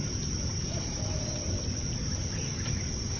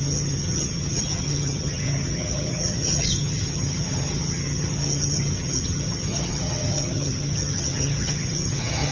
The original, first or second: first